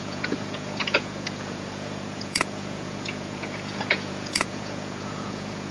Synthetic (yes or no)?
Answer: yes